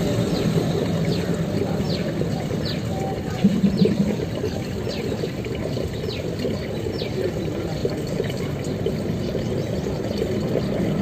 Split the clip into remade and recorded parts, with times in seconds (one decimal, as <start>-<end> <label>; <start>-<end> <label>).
0.0-11.0 recorded